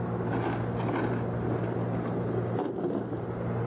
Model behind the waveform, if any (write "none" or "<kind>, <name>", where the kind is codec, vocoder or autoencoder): none